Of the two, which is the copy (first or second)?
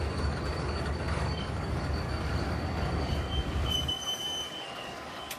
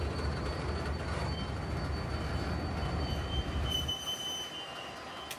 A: first